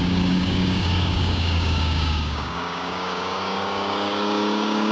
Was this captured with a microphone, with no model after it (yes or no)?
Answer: no